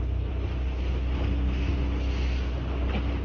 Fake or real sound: real